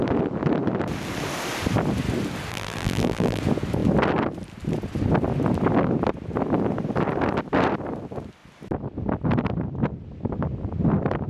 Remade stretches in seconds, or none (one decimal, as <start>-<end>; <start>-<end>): 2.5-3.4